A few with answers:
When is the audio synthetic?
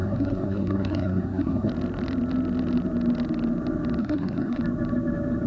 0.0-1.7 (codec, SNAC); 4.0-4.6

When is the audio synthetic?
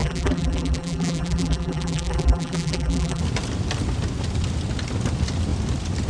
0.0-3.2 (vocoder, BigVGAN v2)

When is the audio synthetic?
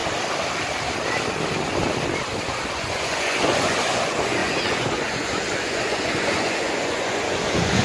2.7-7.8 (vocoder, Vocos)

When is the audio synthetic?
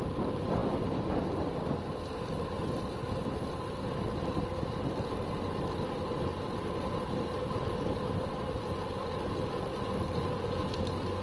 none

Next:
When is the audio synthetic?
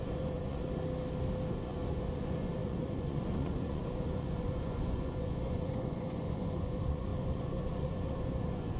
0.0-0.6 (vocoder, Vocos); 1.5-8.8